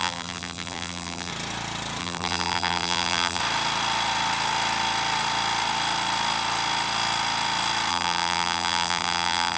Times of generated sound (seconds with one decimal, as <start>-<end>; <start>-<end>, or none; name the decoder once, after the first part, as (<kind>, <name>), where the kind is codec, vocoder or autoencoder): 0.0-1.3 (vocoder, BigVGAN v2); 2.0-3.4; 7.9-9.6